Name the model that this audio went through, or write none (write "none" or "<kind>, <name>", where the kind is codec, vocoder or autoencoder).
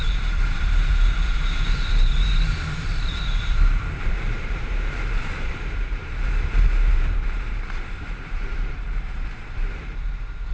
vocoder, BigVGAN v2